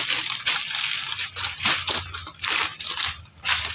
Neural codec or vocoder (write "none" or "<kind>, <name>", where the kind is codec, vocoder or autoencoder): none